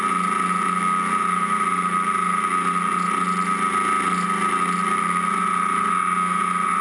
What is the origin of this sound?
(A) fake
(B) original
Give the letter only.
B